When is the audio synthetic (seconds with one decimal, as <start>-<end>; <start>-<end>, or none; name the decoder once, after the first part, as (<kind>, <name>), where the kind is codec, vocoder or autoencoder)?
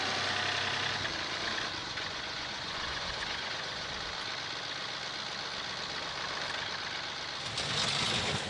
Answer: 1.8-3.9 (vocoder, Vocos)